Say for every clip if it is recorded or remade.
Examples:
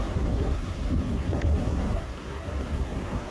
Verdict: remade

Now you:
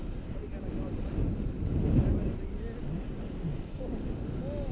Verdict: recorded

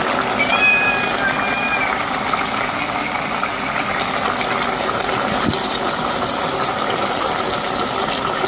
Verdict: recorded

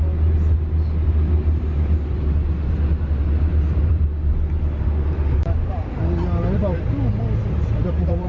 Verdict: recorded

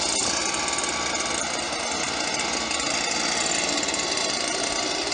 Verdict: recorded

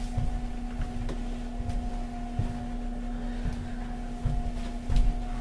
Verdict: recorded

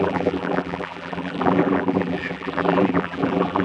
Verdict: remade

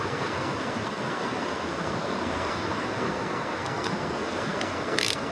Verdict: remade